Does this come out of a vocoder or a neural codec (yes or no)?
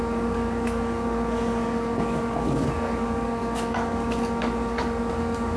yes